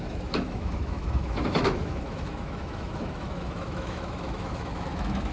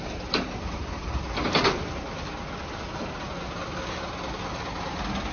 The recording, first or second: second